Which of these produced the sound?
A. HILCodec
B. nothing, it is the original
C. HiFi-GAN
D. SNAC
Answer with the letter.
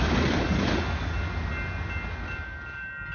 B